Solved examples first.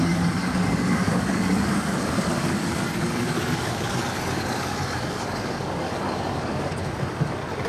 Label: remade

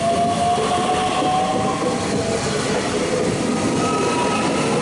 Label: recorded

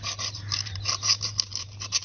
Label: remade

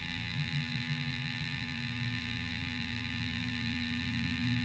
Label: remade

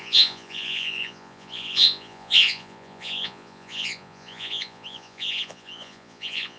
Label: remade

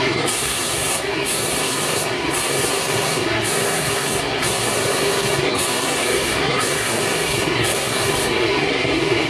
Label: remade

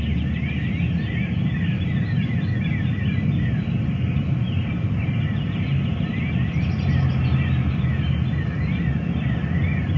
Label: recorded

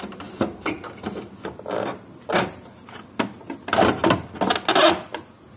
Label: recorded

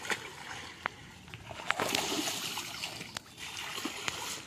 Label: recorded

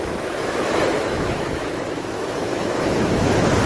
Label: remade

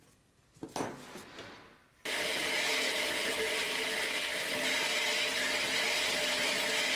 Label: recorded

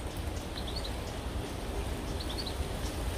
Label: recorded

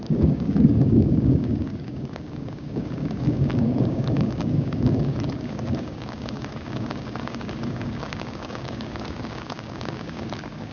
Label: remade